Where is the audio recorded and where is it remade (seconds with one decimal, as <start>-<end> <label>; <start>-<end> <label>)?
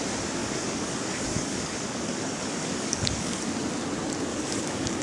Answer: 0.0-0.4 recorded; 0.4-3.4 remade; 3.4-4.3 recorded; 4.3-5.0 remade